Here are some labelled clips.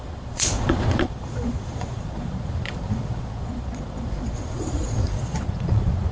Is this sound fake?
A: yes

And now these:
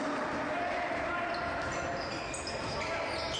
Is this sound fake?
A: no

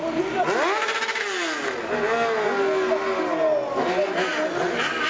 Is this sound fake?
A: no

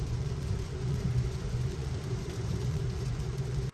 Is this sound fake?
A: yes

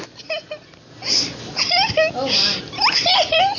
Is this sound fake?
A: no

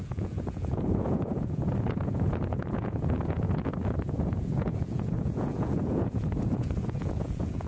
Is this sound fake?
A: yes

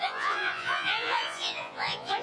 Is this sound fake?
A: yes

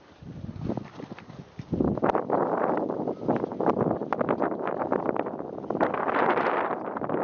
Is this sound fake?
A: no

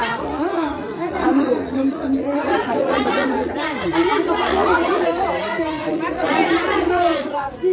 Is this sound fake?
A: yes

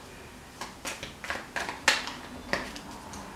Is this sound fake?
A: no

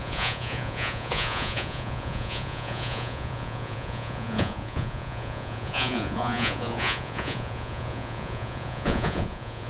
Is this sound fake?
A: yes